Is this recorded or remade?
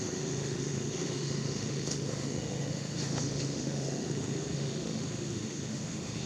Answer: remade